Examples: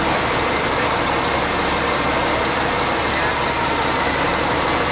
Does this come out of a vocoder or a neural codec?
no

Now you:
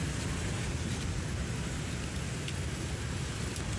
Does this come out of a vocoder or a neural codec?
no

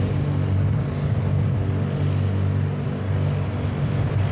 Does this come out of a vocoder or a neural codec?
no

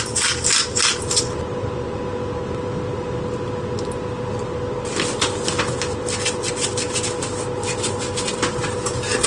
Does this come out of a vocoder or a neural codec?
no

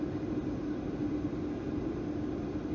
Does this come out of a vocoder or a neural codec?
no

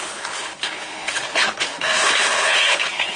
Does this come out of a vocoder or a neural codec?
yes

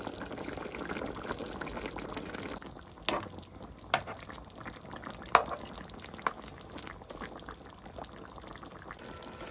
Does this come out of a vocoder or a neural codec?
no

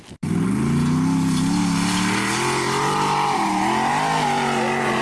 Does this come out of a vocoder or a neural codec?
no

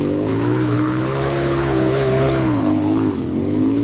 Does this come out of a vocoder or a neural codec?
yes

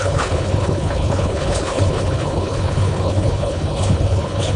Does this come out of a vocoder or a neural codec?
yes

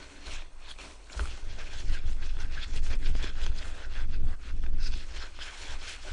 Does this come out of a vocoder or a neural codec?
yes